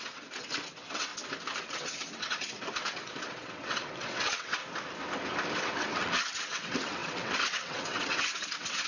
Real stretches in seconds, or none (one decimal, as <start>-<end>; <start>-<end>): 1.1-1.6; 4.6-5.6